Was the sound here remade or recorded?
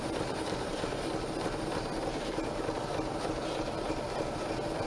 recorded